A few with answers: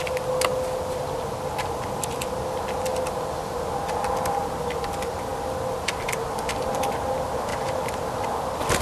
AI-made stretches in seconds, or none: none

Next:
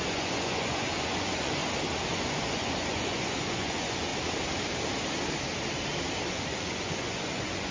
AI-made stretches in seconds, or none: 0.0-1.6 (vocoder, Vocos); 2.1-4.1; 6.3-7.7